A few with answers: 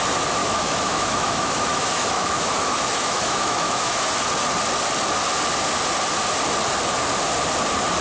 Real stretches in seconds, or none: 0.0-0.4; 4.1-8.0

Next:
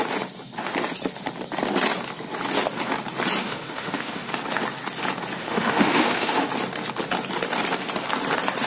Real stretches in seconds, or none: 0.0-3.4; 4.3-5.4; 6.5-8.7

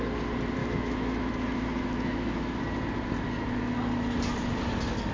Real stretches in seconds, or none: 0.0-0.6; 2.6-5.1